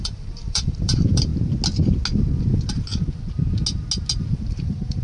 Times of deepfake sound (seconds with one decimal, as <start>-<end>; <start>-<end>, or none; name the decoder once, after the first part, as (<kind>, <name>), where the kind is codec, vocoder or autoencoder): 0.0-1.3 (vocoder, BigVGAN v2); 4.3-5.0